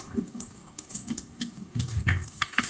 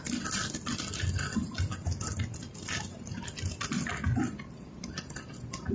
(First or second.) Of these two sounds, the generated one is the first